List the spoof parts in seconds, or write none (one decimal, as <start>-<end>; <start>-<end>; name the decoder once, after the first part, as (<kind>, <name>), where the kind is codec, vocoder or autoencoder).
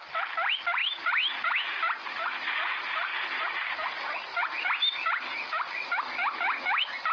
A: none